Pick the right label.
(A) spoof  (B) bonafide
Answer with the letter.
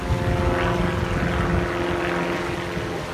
B